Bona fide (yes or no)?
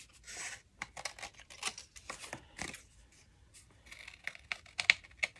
yes